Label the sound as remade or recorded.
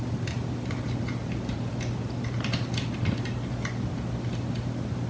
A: recorded